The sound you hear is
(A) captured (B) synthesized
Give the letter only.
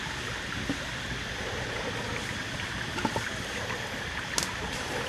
A